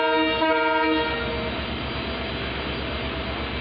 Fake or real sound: real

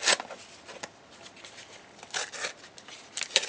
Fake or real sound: real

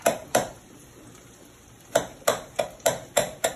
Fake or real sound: fake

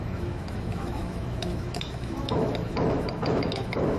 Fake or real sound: fake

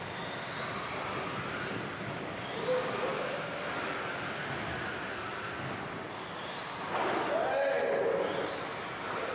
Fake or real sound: real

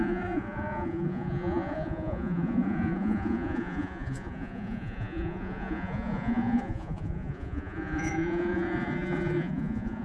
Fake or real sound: fake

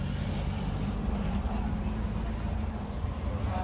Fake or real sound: real